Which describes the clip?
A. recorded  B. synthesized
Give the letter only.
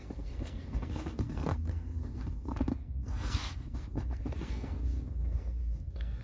B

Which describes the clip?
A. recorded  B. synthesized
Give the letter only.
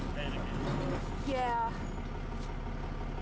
A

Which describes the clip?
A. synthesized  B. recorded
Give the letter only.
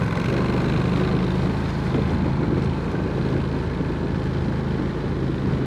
B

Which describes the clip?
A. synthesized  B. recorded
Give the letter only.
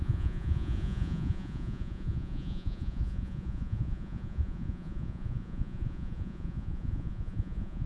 A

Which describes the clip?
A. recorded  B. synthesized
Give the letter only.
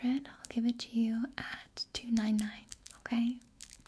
B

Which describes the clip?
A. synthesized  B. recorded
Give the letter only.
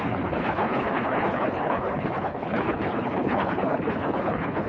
A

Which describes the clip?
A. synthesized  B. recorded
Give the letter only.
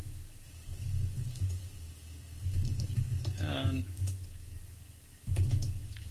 A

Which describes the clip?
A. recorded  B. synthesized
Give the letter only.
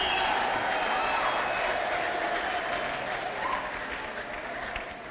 A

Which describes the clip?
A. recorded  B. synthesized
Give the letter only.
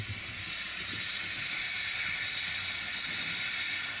A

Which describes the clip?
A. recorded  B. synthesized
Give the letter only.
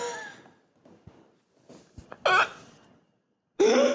A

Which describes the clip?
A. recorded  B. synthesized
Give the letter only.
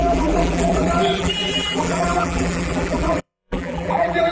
B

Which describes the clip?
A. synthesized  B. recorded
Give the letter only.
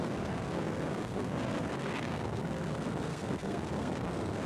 A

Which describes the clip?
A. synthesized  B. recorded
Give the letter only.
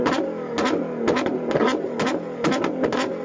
B